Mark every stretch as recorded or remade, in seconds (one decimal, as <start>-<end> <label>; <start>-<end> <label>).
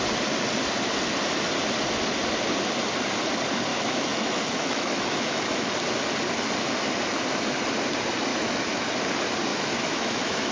0.0-3.7 recorded; 3.7-5.7 remade; 5.7-8.3 recorded; 8.3-8.9 remade; 8.9-9.5 recorded; 9.5-10.5 remade